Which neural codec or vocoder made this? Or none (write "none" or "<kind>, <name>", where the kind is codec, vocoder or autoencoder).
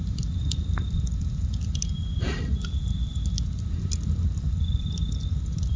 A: none